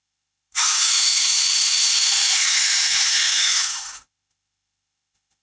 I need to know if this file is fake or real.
fake